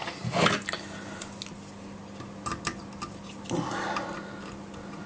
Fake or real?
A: real